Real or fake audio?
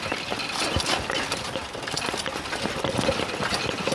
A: real